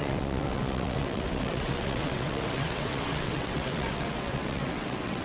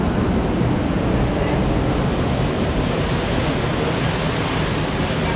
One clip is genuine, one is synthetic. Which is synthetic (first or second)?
first